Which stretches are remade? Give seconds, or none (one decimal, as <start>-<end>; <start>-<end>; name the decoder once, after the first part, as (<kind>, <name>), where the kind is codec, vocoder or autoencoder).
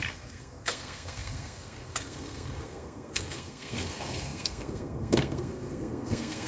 0.0-6.5 (codec, SNAC)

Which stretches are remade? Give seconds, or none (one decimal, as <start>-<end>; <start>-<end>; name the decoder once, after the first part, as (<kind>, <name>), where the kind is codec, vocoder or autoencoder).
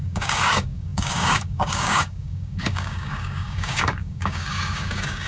0.0-5.3 (codec, DAC)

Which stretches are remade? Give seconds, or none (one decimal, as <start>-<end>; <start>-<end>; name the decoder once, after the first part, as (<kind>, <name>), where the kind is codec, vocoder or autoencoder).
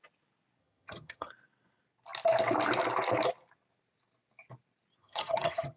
0.6-1.3 (vocoder, HiFi-GAN); 5.0-5.8